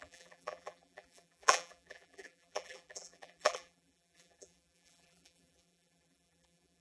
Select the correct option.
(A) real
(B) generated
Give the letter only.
B